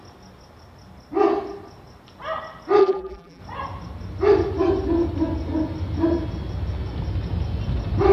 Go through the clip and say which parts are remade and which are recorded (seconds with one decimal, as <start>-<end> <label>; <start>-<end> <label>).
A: 0.0-2.8 recorded; 2.8-3.4 remade; 3.4-8.1 recorded